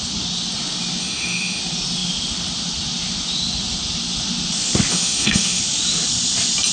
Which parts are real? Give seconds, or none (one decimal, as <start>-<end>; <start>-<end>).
0.0-1.0; 1.6-4.9; 5.6-6.7